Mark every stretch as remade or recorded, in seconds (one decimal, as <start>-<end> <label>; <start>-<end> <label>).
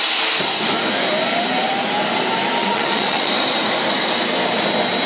0.0-2.6 recorded; 2.6-3.3 remade; 3.3-5.1 recorded